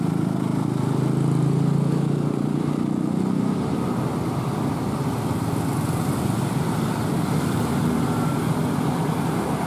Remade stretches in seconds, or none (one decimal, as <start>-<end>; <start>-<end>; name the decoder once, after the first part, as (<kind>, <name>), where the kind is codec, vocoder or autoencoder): none